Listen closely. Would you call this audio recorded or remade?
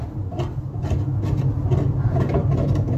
recorded